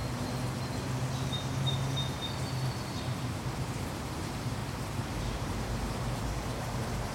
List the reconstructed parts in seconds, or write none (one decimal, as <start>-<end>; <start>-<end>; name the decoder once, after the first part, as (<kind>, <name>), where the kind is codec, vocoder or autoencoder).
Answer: 2.7-4.6 (vocoder, BigVGAN v2); 5.2-7.1